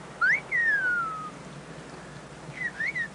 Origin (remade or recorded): recorded